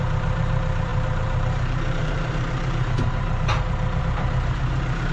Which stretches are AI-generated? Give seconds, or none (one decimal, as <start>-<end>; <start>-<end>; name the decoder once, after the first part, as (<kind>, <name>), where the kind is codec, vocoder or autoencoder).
0.0-5.1 (vocoder, BigVGAN v2)